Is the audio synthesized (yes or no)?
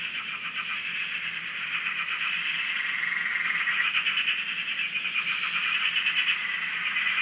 no